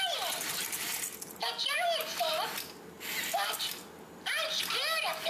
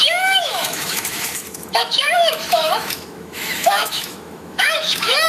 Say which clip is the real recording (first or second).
first